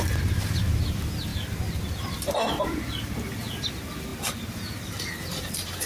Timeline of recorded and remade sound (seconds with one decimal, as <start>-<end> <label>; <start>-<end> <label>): 0.0-5.9 remade